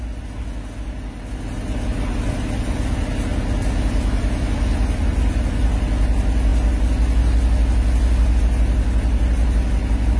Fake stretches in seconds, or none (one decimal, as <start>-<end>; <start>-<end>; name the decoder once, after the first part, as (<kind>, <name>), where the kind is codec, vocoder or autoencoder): none